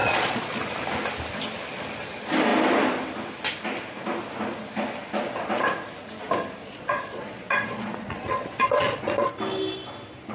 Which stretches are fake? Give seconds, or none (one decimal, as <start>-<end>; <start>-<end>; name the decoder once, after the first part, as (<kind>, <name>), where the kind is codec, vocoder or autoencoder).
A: 0.0-0.6 (vocoder, Vocos); 6.6-9.3